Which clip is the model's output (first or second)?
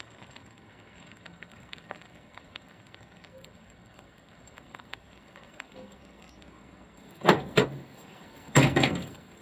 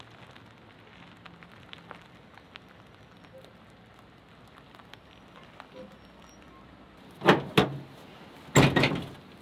first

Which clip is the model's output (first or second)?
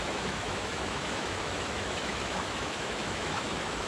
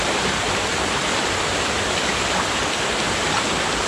first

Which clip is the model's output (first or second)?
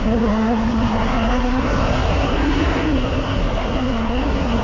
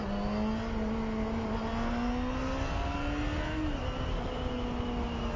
first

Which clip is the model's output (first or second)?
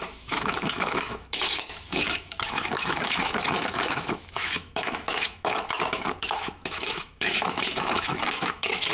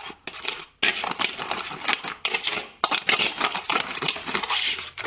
first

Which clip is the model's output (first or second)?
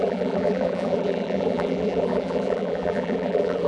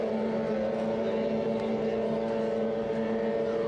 first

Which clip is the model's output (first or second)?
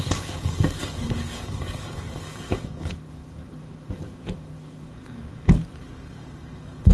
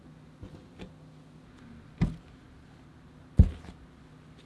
first